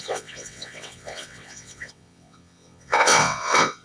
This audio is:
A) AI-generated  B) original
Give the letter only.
A